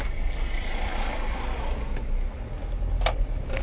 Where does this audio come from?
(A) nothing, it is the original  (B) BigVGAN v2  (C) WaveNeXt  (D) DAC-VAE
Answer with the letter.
A